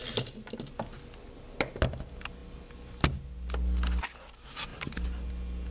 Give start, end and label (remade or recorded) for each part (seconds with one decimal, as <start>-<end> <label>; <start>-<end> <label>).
0.0-5.7 recorded